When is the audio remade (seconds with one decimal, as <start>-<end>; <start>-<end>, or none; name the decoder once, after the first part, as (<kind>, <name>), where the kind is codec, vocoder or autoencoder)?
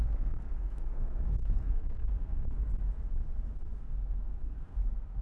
0.0-2.7 (codec, SNAC); 3.8-5.2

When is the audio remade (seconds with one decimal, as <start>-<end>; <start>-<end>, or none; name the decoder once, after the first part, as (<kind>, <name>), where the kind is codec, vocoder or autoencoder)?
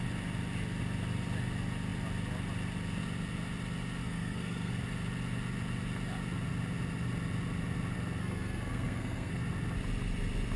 4.0-4.7 (codec, SNAC); 8.2-9.3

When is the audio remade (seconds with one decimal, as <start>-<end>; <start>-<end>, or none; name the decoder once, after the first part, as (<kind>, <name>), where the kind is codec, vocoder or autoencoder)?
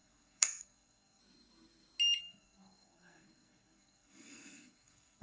0.0-1.2 (codec, SNAC); 2.2-5.2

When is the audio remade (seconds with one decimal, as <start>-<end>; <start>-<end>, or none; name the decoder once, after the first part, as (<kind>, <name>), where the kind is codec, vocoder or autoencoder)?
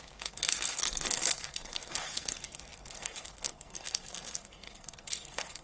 0.0-5.6 (codec, SNAC)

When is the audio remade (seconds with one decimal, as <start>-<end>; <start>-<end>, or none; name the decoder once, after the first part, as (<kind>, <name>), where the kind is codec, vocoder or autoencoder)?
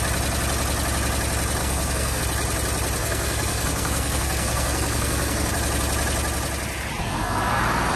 1.6-2.2 (codec, SNAC); 3.0-5.5; 7.0-7.6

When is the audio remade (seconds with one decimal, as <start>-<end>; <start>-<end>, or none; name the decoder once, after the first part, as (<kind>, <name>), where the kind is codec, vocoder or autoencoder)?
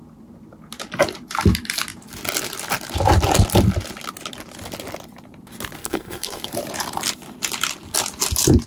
5.8-6.5 (codec, SNAC)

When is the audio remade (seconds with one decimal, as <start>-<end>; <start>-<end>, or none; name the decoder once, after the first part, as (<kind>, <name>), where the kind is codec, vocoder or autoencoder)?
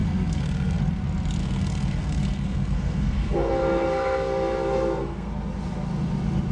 0.0-0.8 (codec, SNAC); 1.4-5.3